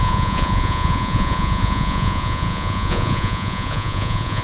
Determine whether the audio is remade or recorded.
remade